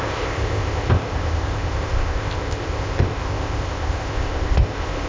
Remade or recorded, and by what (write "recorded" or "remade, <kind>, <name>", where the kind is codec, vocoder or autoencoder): remade, codec, ZipCodec